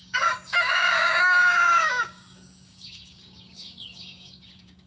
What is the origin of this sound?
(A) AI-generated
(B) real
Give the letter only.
A